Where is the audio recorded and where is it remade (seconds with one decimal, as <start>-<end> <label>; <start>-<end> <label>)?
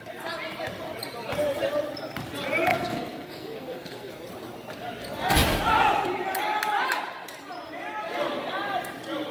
0.0-2.7 recorded; 2.7-4.1 remade; 4.1-9.3 recorded